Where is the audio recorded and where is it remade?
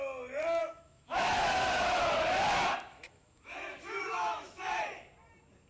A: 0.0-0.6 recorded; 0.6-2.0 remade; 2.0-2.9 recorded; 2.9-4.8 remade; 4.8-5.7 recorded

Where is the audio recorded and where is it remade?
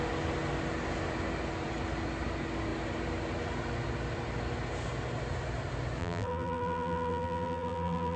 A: 0.0-6.0 recorded; 6.0-8.2 remade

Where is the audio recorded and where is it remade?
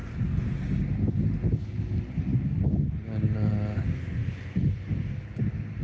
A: 0.0-5.8 recorded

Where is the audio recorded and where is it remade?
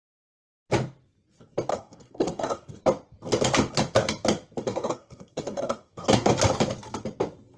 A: 0.0-1.7 recorded; 1.7-2.8 remade; 2.8-4.6 recorded; 4.6-6.3 remade; 6.3-7.6 recorded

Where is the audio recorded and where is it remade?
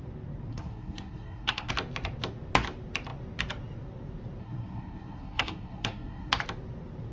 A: 0.0-0.5 recorded; 0.5-1.7 remade; 1.7-4.4 recorded; 4.4-6.3 remade; 6.3-7.1 recorded